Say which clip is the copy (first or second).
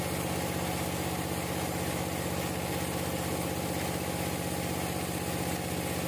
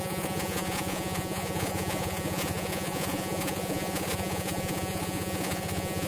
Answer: second